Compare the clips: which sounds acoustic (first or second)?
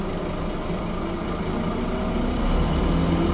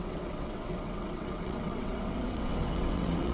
first